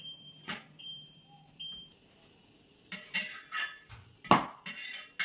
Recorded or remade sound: recorded